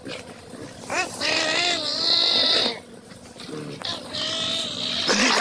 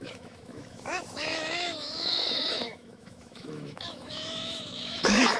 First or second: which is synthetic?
second